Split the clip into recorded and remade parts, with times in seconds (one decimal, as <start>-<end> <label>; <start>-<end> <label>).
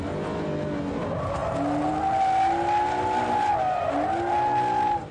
0.0-5.1 recorded